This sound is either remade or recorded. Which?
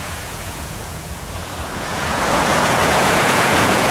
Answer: remade